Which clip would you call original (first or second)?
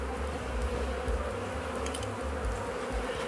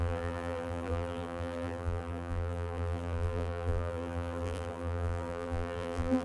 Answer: first